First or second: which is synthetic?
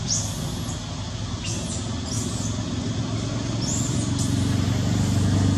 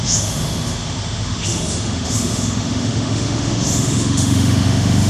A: second